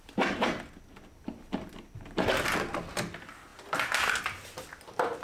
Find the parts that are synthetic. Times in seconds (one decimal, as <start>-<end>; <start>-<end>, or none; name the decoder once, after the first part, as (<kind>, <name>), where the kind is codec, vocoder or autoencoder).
none